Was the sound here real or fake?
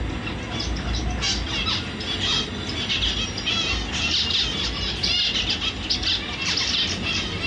real